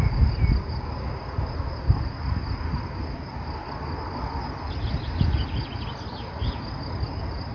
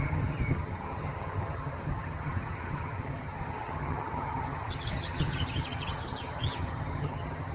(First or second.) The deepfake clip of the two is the second